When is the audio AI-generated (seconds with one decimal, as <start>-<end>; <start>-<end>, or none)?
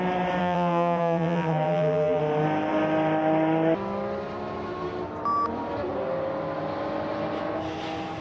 0.4-2.2